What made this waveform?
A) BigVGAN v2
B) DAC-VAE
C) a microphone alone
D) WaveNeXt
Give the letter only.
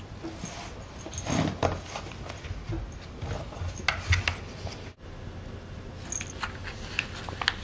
C